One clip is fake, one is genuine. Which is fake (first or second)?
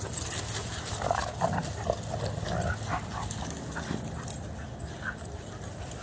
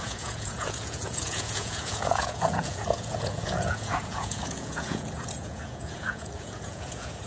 second